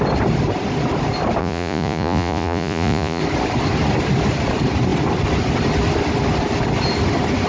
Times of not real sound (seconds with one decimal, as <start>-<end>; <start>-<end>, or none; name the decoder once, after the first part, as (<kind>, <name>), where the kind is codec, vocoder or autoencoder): 1.4-3.2 (vocoder, Vocos)